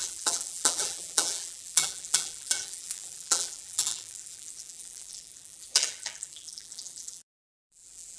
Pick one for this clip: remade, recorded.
remade